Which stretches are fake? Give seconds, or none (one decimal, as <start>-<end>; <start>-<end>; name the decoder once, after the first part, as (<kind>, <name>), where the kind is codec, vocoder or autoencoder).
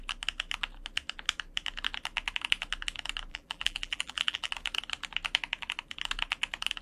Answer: 3.3-4.5 (vocoder, BigVGAN v2)